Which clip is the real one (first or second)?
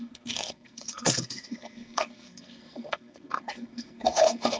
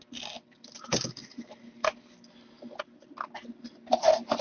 second